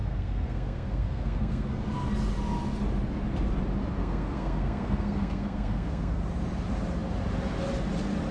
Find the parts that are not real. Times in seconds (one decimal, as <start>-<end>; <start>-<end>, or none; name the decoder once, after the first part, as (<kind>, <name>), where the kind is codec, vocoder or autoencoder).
0.0-1.7 (codec, SNAC); 4.0-6.2